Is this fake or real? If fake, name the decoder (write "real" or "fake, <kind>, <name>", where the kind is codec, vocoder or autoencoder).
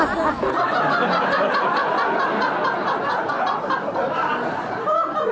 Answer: real